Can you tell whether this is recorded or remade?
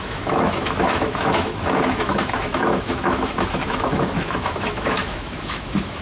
remade